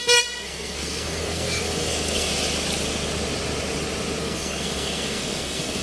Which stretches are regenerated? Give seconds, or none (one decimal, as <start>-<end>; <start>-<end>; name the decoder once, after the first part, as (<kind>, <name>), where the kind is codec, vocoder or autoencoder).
0.0-2.3 (codec, SNAC); 4.2-5.8